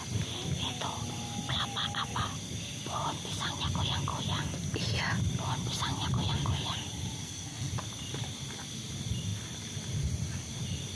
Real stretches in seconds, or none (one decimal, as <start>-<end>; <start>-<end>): 0.0-7.2; 7.7-11.0

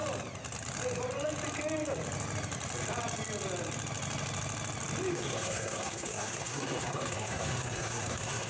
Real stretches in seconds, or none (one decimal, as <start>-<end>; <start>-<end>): 0.0-5.1

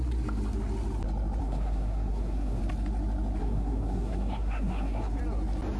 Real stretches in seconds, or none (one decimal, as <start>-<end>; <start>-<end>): 0.0-1.4; 2.6-3.4; 5.2-5.8